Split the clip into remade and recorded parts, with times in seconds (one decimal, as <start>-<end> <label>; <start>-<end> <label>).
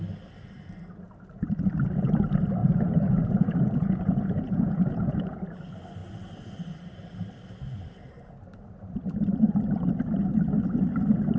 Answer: 0.0-2.6 recorded; 2.6-5.5 remade; 5.5-11.4 recorded